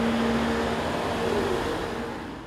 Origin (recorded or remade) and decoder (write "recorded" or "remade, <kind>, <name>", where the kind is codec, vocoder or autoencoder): recorded